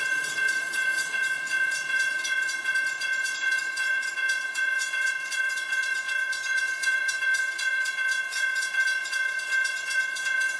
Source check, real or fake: fake